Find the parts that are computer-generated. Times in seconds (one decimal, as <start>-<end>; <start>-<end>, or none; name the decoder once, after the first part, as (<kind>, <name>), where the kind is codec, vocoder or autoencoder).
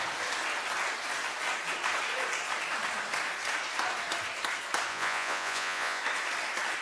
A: 4.9-6.0 (vocoder, Vocos)